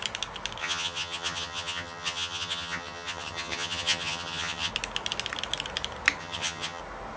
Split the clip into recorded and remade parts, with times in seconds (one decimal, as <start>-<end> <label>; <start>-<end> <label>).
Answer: 0.0-0.6 recorded; 0.6-4.7 remade; 4.7-6.2 recorded; 6.2-6.8 remade; 6.8-7.2 recorded